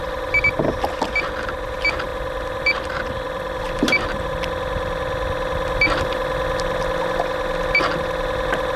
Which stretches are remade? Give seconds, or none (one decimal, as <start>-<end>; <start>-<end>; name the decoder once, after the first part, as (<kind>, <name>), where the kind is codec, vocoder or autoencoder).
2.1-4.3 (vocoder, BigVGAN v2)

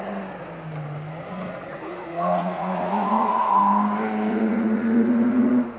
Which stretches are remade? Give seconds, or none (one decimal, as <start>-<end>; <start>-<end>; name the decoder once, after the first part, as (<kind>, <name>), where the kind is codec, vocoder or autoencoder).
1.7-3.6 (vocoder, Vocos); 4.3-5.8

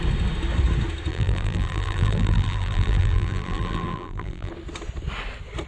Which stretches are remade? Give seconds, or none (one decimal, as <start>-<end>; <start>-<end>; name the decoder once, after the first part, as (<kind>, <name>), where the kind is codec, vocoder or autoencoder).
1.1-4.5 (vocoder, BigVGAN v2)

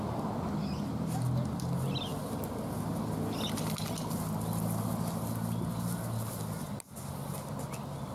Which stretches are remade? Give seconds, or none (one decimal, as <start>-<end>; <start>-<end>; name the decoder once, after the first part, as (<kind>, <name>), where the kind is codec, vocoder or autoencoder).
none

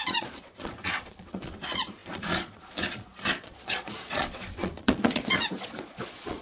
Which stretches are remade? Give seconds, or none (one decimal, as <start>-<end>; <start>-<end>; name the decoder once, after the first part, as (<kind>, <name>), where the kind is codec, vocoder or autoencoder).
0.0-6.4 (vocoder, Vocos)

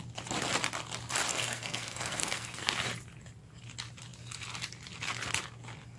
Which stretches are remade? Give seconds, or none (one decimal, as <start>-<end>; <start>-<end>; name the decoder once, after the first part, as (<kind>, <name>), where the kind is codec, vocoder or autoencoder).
1.3-2.7 (codec, SNAC)